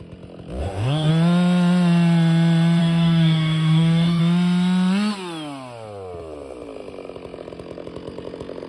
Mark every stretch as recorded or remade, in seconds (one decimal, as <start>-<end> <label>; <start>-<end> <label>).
0.0-0.6 recorded; 0.6-1.1 remade; 1.1-2.8 recorded; 2.8-4.2 remade; 4.2-8.7 recorded